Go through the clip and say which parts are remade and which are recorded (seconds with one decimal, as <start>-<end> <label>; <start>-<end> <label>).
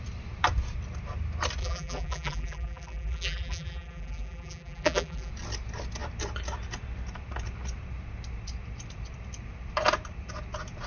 0.0-1.6 recorded; 1.6-5.3 remade; 5.3-10.9 recorded